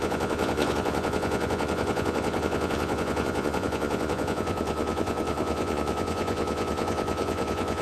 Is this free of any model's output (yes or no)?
no